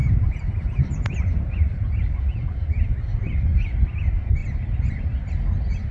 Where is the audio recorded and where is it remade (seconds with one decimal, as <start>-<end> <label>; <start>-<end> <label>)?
0.0-4.4 recorded; 4.4-5.3 remade; 5.3-5.9 recorded